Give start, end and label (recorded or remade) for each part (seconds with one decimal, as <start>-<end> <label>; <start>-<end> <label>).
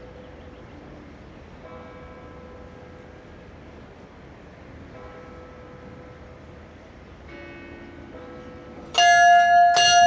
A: 0.0-10.1 recorded